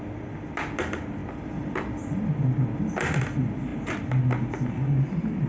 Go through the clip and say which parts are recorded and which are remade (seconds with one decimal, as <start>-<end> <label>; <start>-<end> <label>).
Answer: 0.0-5.5 recorded